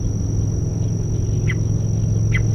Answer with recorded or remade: recorded